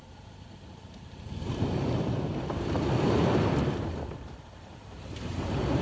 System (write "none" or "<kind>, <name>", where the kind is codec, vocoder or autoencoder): vocoder, BigVGAN v2